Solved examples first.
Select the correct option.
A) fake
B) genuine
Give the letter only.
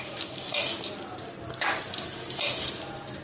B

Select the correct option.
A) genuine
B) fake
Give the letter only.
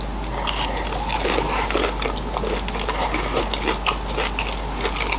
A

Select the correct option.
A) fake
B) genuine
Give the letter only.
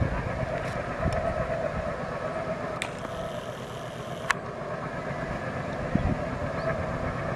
B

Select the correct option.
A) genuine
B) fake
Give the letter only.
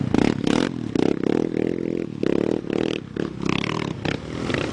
A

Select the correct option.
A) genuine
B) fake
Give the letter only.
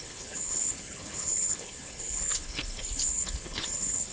B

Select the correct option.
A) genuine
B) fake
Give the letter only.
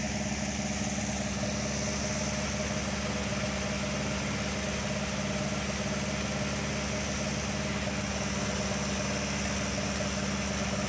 A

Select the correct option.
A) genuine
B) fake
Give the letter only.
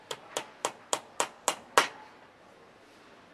A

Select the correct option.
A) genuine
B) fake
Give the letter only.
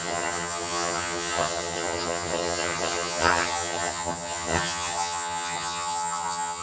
B